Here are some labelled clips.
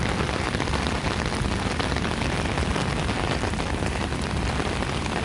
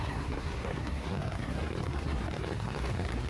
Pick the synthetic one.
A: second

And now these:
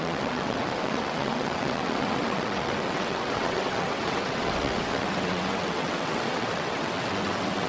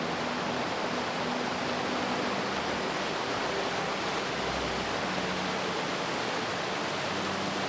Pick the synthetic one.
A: first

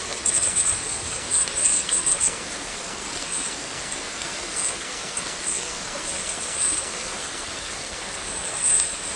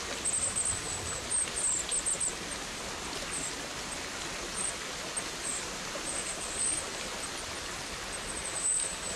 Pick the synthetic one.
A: first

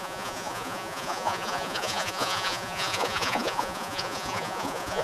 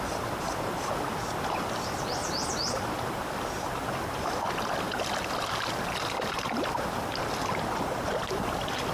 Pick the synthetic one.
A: first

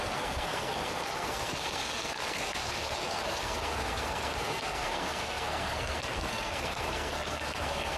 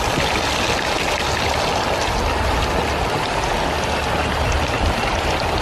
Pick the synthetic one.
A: first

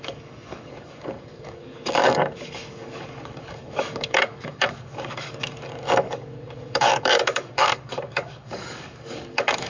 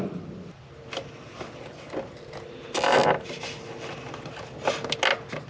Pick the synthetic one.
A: first